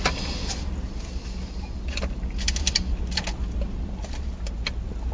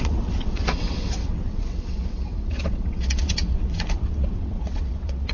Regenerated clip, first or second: second